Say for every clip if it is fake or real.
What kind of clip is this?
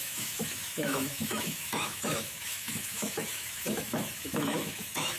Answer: fake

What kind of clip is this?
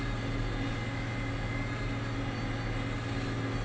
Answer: real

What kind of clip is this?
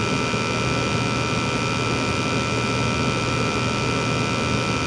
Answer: real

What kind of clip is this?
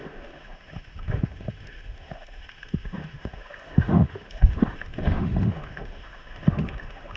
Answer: fake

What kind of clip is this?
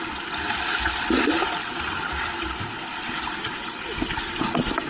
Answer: real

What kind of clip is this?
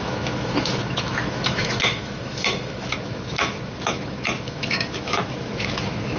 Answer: fake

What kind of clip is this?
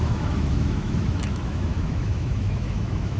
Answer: fake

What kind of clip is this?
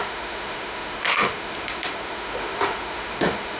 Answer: fake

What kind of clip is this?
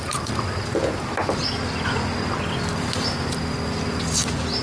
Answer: real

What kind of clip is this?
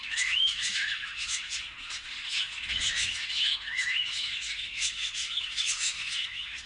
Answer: fake